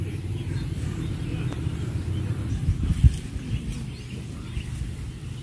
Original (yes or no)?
yes